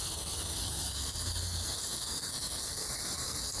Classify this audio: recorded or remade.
remade